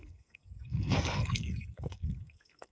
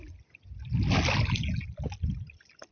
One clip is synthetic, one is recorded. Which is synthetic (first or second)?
first